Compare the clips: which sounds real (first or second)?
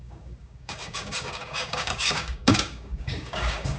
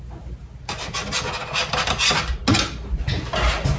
second